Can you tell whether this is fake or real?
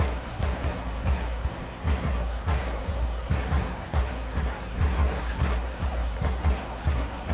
fake